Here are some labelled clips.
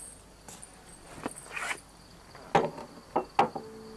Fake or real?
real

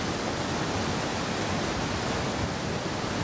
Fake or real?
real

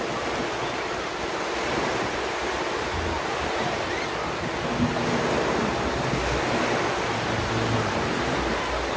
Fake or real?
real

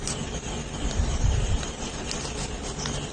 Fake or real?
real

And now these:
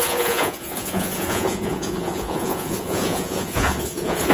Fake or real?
fake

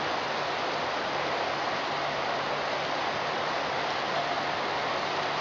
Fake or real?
real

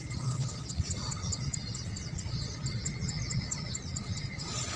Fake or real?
fake